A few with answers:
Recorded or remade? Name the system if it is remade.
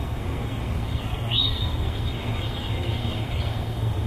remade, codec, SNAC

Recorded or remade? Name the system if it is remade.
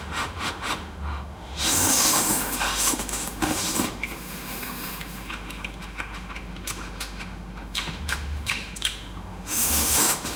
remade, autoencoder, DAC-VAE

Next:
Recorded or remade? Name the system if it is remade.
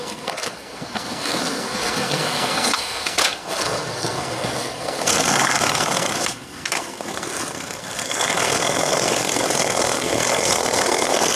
remade, codec, SNAC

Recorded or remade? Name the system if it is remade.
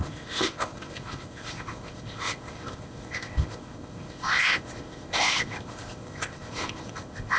remade, codec, ZipCodec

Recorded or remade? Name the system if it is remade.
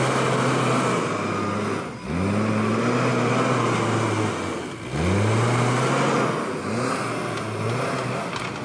recorded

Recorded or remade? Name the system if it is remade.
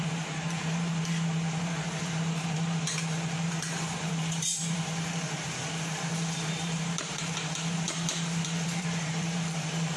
remade, vocoder, BigVGAN v2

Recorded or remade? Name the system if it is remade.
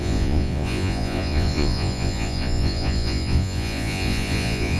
remade, vocoder, Vocos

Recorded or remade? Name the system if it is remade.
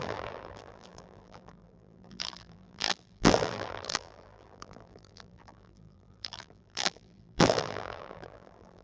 remade, vocoder, BigVGAN v2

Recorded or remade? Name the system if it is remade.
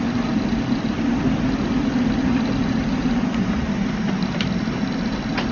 recorded